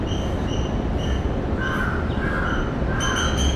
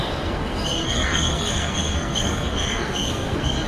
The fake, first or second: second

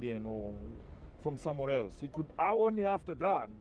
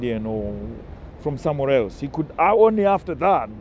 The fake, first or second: first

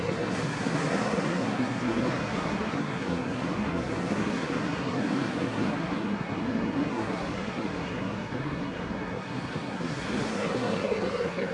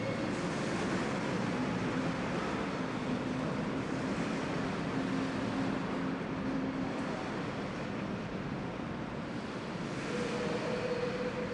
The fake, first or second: first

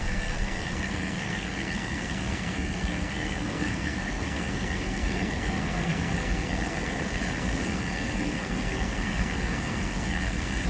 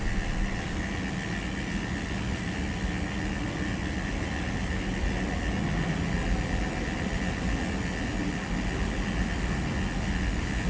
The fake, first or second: first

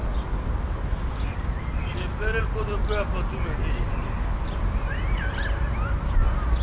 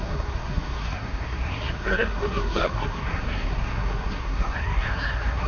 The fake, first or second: second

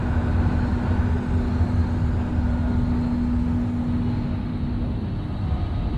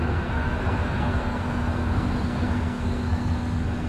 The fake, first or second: second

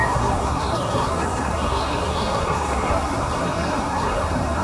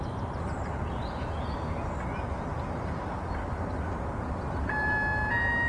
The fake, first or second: first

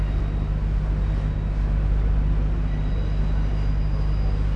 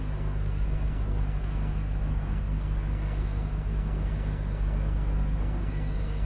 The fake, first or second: second